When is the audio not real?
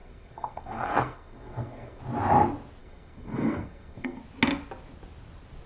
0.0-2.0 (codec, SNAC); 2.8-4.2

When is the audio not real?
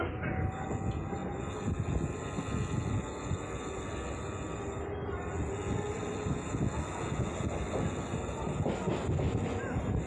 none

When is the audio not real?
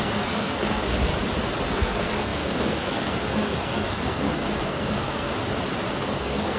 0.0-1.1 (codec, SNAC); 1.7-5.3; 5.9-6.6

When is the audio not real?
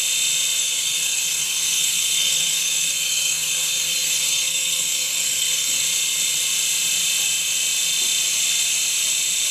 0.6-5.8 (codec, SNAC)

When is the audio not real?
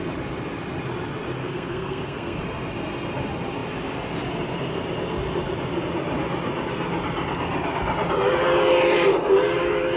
1.4-2.4 (codec, SNAC)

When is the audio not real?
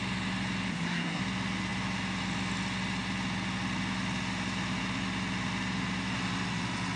0.7-1.2 (codec, SNAC)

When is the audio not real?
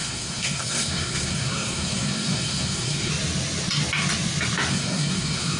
0.0-3.1 (codec, SNAC); 4.7-5.6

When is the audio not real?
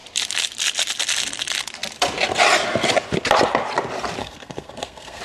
4.2-5.2 (codec, SNAC)